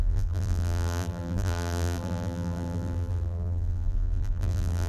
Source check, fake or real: fake